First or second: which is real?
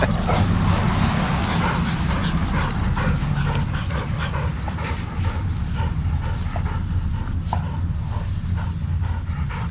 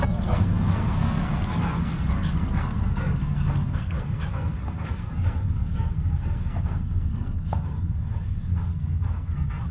first